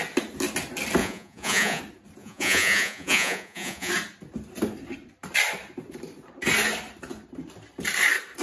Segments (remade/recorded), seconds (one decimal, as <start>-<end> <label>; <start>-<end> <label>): 0.0-1.0 recorded; 1.0-1.8 remade; 1.8-2.2 recorded; 2.2-3.9 remade; 3.9-8.4 recorded